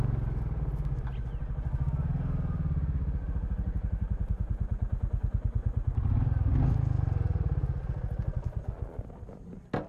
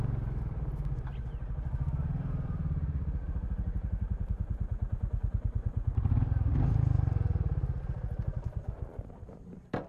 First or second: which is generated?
second